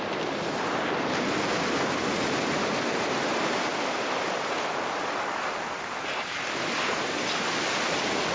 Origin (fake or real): real